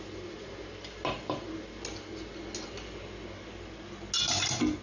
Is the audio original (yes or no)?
yes